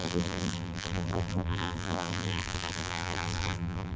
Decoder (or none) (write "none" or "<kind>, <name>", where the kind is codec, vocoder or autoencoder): vocoder, BigVGAN v2